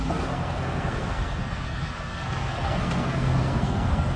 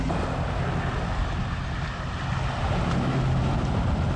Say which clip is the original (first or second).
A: second